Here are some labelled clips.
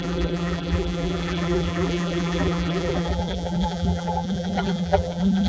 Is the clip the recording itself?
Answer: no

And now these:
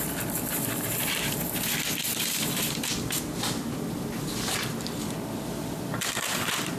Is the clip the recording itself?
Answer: no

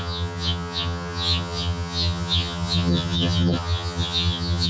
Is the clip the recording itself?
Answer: no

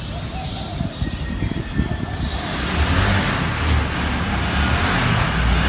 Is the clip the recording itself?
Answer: yes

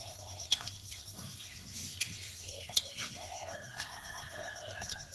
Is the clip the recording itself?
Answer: no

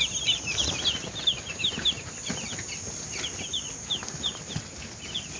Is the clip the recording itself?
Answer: yes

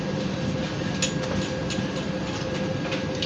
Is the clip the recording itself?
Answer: yes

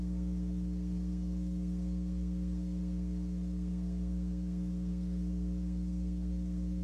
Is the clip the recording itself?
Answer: no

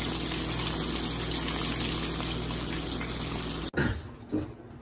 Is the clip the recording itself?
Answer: yes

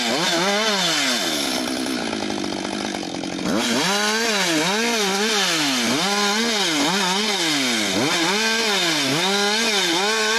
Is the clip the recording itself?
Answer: yes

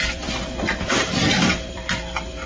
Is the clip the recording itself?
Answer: no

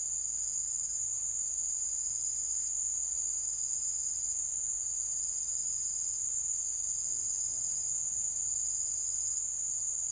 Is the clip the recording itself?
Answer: yes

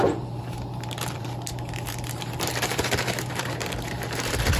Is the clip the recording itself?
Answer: no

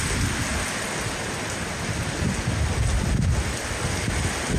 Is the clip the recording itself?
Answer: yes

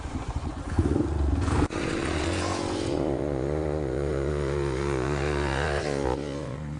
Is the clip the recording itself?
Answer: no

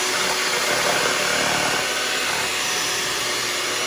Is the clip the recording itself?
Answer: yes